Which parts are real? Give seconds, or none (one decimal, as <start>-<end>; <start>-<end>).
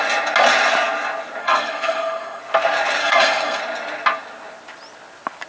0.0-1.4; 2.4-3.0; 3.6-5.5